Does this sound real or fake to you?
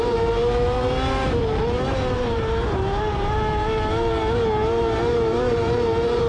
fake